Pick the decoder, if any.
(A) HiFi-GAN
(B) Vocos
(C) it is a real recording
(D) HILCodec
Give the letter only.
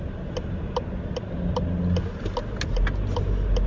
C